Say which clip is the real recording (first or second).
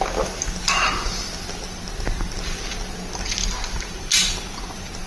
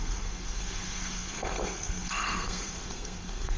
first